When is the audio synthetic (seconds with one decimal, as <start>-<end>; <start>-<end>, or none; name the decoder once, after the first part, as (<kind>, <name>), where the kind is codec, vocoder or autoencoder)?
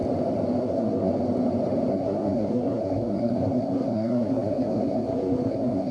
0.6-1.1 (codec, SNAC); 1.9-5.9